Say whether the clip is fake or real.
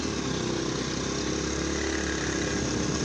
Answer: real